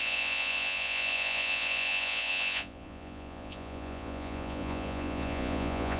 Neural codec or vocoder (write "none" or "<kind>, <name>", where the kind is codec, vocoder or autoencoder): vocoder, Vocos